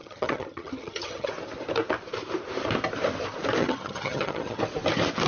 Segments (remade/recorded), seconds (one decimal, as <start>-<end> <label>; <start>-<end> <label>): 0.0-1.3 remade; 1.3-3.6 recorded; 3.6-4.6 remade; 4.6-5.3 recorded